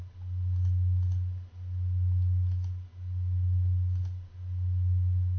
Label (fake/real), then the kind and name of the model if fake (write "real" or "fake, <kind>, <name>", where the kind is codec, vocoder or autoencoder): real